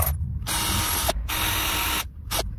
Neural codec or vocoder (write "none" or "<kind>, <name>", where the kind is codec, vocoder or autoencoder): none